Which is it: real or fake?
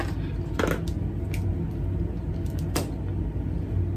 real